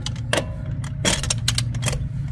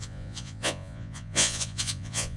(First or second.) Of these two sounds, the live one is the first